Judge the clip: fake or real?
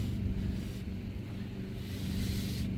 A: real